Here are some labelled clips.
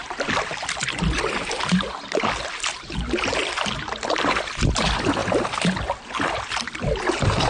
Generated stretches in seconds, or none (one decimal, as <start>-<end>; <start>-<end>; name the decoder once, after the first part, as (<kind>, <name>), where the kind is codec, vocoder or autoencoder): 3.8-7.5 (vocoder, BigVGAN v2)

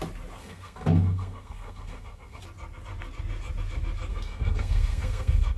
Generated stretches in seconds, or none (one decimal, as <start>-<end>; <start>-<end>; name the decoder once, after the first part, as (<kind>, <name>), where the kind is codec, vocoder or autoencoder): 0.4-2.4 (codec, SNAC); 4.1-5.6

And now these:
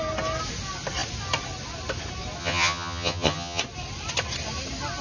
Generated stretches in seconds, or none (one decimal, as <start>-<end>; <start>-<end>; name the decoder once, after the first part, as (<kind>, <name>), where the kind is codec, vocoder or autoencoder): 2.4-3.6 (vocoder, HiFi-GAN)